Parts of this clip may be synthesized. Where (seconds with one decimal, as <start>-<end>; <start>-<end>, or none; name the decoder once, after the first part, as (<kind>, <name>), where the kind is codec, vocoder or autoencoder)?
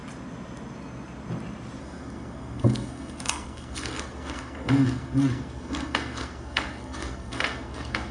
1.8-8.1 (codec, SNAC)